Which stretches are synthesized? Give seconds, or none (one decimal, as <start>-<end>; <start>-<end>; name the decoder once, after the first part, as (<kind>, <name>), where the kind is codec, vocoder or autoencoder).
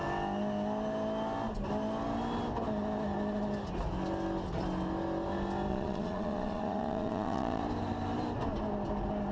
5.7-7.6 (vocoder, Vocos)